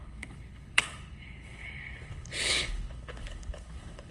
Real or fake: fake